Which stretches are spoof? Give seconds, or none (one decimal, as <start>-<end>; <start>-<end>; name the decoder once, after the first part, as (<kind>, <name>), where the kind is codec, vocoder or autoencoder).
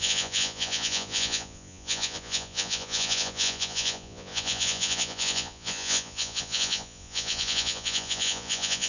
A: 0.0-8.9 (vocoder, Vocos)